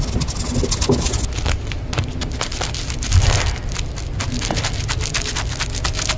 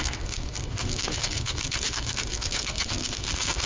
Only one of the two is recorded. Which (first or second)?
first